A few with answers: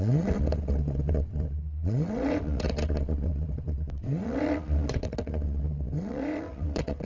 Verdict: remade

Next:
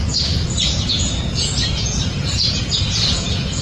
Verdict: remade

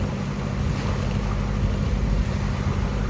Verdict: recorded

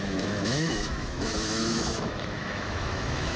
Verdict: remade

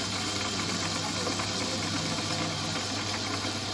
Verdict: recorded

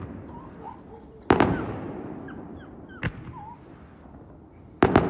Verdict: remade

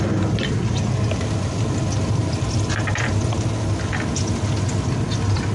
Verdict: recorded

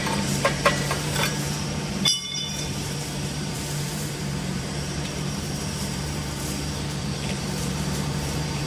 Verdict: remade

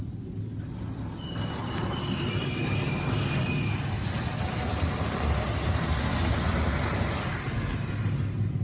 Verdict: recorded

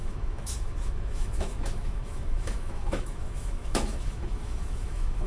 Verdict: remade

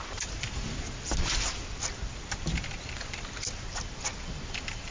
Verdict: recorded